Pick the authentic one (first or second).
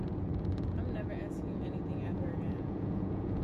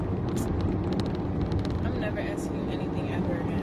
second